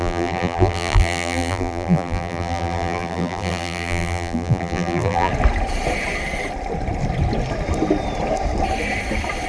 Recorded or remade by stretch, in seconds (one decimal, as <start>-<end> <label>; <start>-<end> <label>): 0.0-5.3 remade; 5.3-9.5 recorded